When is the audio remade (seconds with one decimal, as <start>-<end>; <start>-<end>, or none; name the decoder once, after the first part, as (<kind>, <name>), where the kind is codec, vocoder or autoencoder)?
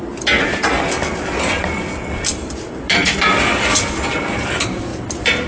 none